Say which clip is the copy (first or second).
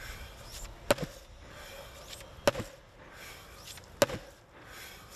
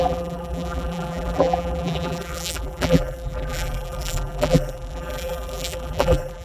second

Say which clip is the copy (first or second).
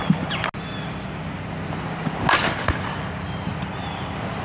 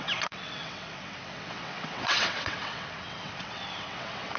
second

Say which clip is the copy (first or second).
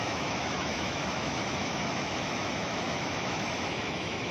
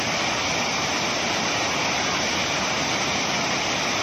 first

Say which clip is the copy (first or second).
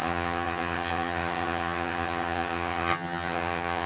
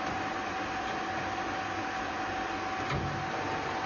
first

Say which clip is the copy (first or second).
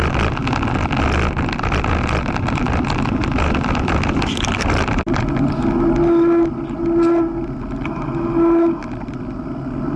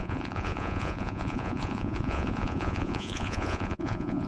second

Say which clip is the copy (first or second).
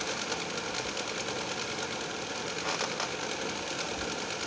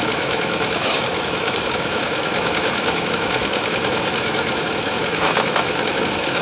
second